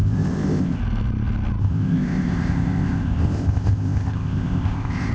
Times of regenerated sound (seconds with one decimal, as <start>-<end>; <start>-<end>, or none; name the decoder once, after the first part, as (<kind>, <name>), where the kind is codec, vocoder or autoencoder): 0.0-0.8 (codec, ZipCodec); 1.6-5.1